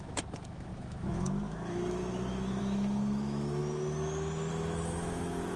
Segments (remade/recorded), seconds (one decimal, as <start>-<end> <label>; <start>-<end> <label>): 0.0-3.6 remade; 3.6-4.5 recorded; 4.5-5.6 remade